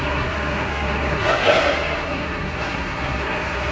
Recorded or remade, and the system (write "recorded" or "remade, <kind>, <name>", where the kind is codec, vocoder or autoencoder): remade, codec, SNAC